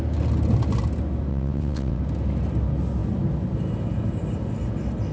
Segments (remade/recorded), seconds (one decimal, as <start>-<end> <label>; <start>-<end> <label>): 0.0-1.3 recorded; 1.3-2.0 remade; 2.0-5.1 recorded